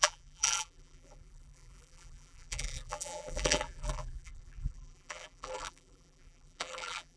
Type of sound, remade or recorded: remade